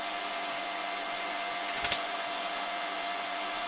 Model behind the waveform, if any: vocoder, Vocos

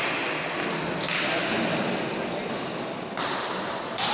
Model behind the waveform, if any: none